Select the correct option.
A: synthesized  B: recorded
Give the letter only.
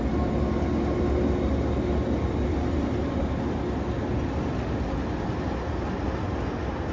B